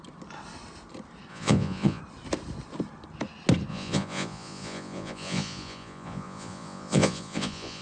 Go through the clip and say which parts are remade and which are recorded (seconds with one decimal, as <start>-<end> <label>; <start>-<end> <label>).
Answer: 0.0-1.3 recorded; 1.3-2.0 remade; 2.0-3.7 recorded; 3.7-7.8 remade